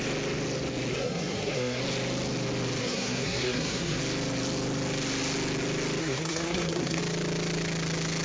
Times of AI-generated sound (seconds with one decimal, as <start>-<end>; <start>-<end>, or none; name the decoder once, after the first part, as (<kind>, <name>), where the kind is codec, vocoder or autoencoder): 0.9-1.8 (codec, SNAC); 2.8-4.0; 6.0-7.0